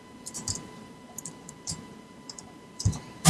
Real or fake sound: fake